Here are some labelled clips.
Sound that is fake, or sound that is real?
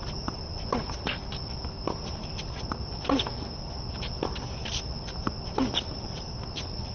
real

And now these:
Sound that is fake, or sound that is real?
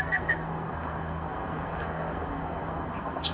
fake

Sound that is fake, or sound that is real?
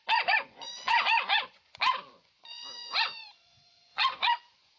fake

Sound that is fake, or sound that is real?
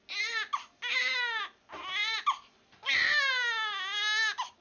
real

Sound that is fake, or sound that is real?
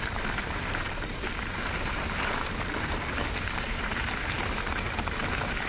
fake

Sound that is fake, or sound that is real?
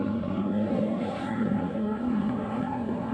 fake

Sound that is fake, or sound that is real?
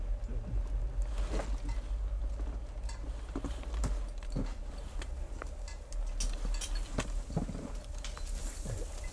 real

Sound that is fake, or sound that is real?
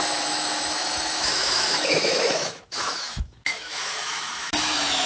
fake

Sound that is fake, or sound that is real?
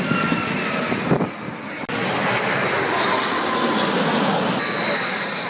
real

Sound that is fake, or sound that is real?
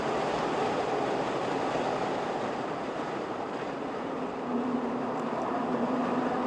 fake